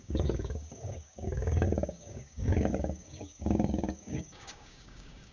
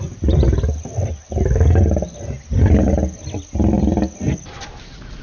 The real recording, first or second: second